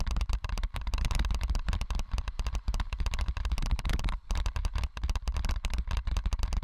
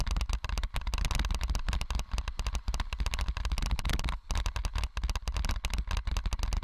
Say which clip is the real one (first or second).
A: second